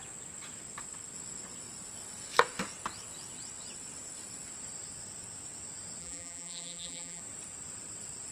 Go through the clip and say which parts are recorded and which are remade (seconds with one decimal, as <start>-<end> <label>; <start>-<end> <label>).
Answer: 0.0-6.0 recorded; 6.0-7.2 remade; 7.2-8.3 recorded